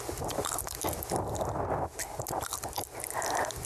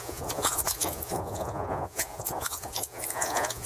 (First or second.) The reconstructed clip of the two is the second